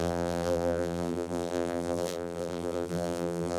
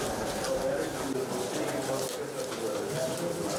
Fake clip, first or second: first